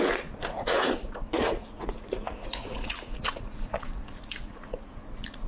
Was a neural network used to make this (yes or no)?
yes